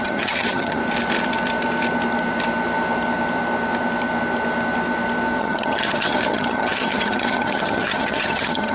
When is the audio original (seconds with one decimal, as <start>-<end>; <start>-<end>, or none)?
0.8-5.4